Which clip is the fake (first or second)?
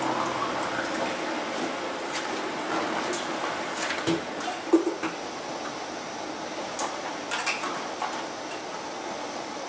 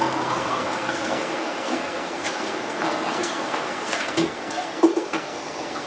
second